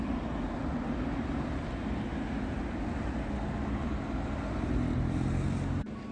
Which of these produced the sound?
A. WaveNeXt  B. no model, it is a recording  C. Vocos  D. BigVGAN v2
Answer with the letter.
B